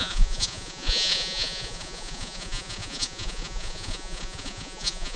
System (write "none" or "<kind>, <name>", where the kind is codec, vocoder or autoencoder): vocoder, Vocos